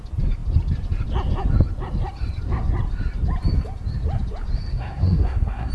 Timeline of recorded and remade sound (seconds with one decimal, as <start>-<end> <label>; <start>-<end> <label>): 0.0-4.7 recorded; 4.7-5.7 remade